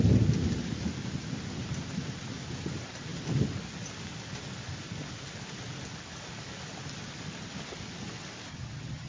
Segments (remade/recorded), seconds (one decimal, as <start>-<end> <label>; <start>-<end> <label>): 0.0-8.5 recorded; 8.5-9.1 remade